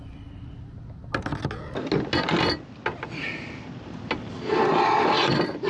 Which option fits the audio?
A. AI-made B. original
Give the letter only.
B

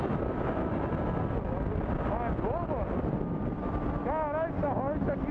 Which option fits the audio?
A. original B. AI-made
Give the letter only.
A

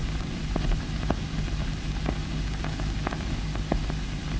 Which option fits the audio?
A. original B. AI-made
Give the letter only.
A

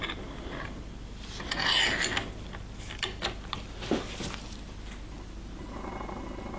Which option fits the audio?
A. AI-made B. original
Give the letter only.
B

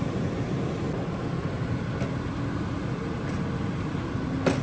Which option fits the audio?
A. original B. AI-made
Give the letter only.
A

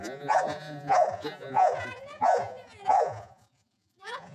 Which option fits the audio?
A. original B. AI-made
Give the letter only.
B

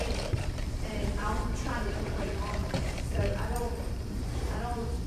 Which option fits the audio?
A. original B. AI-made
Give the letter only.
B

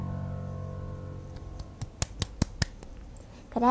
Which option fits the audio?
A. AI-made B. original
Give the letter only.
B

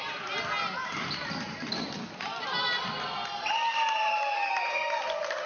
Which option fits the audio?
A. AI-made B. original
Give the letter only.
B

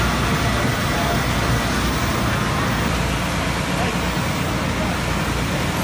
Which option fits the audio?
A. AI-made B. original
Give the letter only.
B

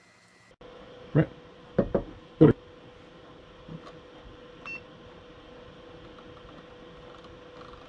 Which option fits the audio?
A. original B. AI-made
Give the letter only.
A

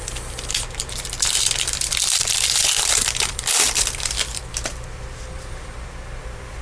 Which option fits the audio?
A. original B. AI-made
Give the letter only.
B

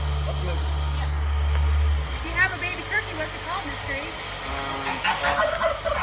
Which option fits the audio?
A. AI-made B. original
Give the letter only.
B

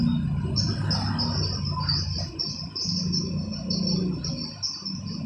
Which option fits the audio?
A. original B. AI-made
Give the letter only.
A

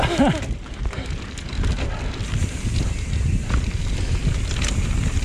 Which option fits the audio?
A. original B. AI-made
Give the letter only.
A